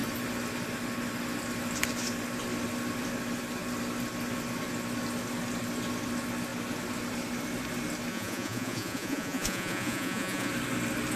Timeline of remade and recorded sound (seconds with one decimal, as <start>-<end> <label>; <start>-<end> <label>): 0.0-8.1 recorded; 8.1-10.5 remade; 10.5-11.2 recorded